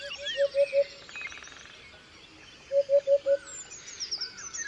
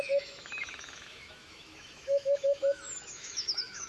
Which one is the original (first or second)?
first